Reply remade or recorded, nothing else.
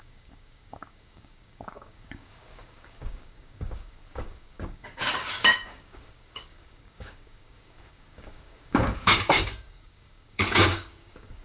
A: remade